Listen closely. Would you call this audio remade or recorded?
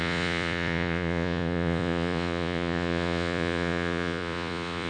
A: remade